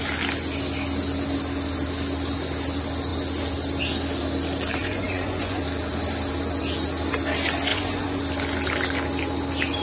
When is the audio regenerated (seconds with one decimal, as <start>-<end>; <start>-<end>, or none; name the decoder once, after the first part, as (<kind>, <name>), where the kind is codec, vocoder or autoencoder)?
4.8-5.6 (vocoder, Vocos); 7.7-8.2